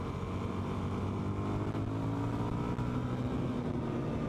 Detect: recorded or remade recorded